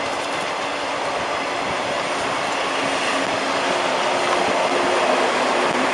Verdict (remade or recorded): recorded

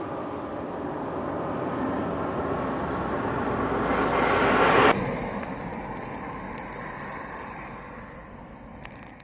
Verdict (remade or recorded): recorded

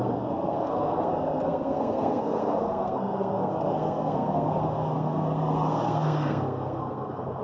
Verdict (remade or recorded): remade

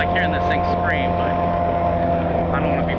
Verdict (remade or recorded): recorded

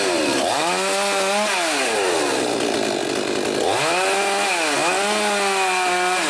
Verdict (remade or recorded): recorded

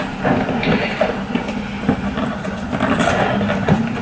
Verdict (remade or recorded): recorded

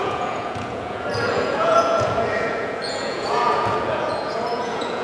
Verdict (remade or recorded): remade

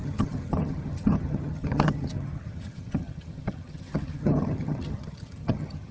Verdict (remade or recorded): remade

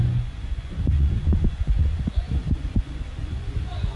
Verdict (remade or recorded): remade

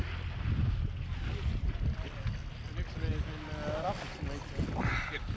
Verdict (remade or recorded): recorded